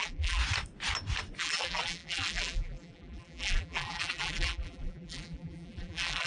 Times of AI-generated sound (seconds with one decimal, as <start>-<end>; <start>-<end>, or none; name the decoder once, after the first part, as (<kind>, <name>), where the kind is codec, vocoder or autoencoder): 0.0-0.4 (vocoder, BigVGAN v2); 1.4-6.3